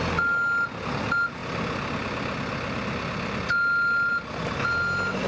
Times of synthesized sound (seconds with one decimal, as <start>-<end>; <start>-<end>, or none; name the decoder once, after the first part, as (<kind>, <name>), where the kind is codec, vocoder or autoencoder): none